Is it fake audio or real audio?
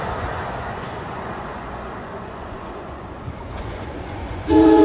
fake